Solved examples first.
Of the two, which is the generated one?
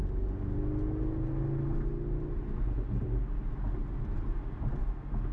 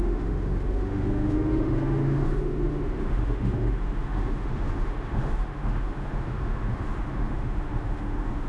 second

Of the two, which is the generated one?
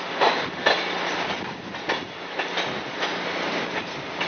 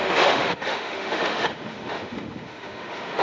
second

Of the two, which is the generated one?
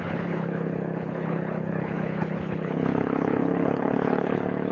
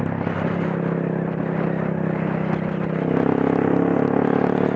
first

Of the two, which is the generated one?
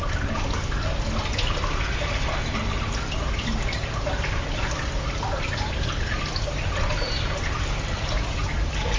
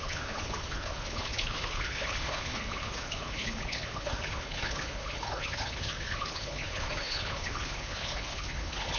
second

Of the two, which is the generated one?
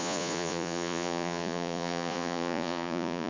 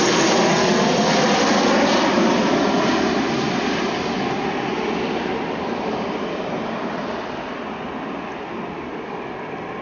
first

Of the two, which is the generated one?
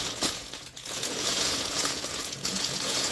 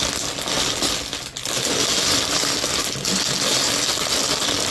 first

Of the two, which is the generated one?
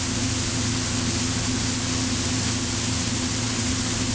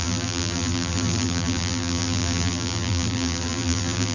second